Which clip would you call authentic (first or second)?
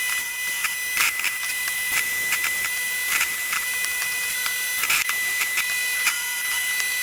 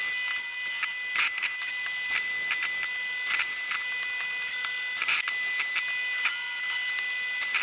second